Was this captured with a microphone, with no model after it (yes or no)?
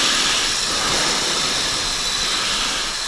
yes